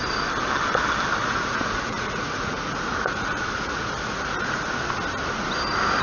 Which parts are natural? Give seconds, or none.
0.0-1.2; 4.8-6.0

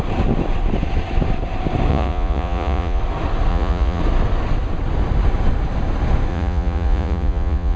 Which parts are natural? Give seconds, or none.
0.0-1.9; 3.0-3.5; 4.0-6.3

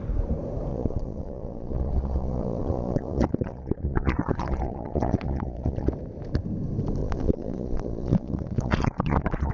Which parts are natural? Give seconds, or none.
0.0-0.7; 5.9-7.0

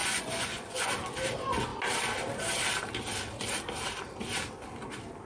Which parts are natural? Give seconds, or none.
0.9-5.3

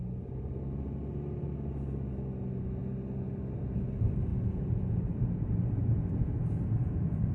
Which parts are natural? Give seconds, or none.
0.0-4.3